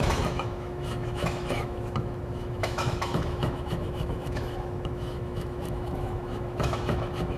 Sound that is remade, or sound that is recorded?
remade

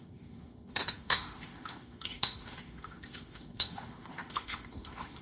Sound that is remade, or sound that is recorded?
remade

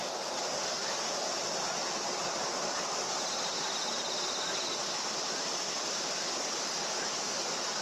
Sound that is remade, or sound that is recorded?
recorded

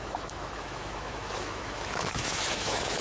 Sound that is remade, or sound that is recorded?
remade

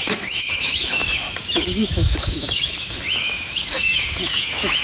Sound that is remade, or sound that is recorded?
remade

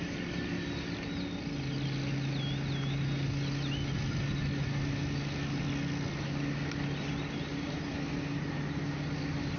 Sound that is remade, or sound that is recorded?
recorded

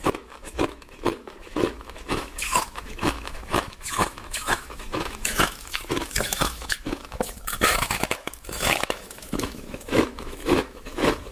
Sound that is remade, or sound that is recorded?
remade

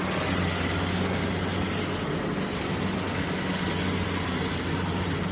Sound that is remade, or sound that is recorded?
recorded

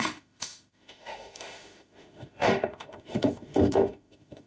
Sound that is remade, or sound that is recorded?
remade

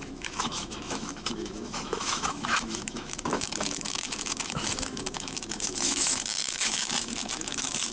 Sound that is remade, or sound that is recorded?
remade